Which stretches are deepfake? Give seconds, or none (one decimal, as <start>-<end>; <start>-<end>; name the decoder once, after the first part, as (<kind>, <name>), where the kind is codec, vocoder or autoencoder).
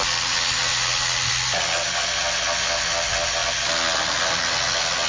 none